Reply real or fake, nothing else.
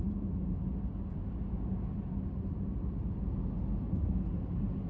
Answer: real